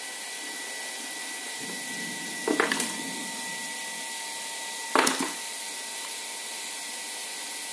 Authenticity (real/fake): real